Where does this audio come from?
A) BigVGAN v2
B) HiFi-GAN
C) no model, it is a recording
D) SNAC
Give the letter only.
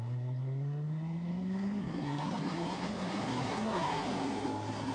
D